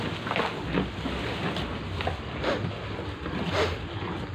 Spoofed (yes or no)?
no